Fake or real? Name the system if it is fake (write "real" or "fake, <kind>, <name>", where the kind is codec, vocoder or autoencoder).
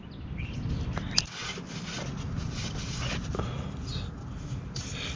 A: real